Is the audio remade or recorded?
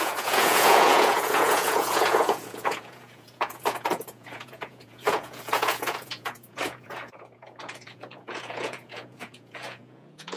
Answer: remade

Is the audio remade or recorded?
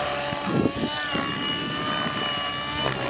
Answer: recorded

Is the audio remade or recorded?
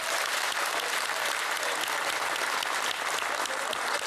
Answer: recorded